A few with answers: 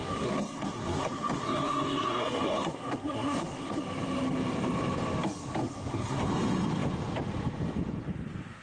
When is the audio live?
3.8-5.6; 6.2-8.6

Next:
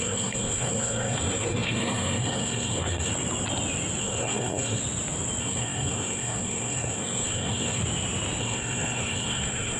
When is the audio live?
3.1-4.0; 4.8-5.4; 7.8-8.4

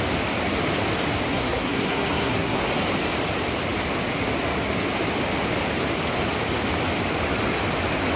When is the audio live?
0.0-1.3; 2.6-8.2

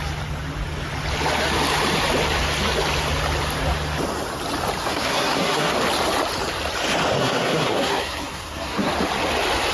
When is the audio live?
0.0-4.8; 5.7-7.2; 8.9-9.7

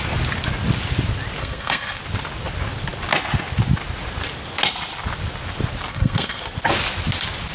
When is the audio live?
0.0-1.4; 2.0-5.9; 6.4-7.5